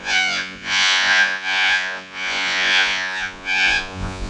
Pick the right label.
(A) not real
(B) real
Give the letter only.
A